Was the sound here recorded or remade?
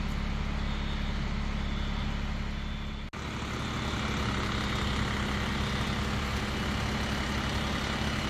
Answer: recorded